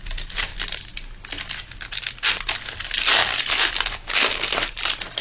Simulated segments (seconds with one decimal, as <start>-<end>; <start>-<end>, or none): none